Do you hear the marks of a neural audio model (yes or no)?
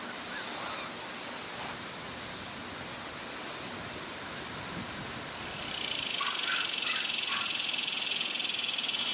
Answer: no